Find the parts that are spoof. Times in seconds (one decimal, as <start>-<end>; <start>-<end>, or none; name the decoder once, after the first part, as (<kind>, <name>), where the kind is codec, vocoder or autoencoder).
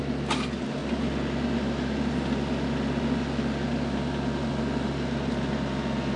none